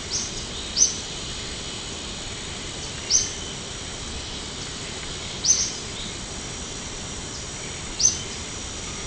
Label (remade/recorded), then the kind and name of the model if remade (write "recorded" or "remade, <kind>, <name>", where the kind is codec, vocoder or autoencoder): recorded